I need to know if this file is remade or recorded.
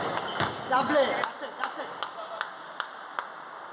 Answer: recorded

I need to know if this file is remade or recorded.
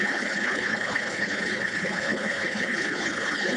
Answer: remade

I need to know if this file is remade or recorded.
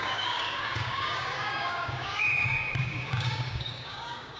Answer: remade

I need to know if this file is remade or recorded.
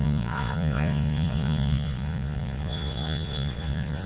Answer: remade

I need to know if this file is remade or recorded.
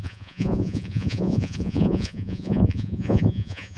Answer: remade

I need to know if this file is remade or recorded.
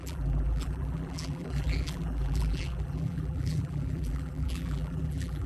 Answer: remade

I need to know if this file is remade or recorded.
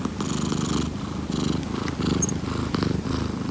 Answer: recorded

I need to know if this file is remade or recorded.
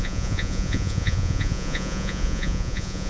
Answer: remade